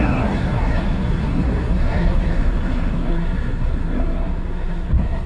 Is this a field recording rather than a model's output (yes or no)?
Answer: no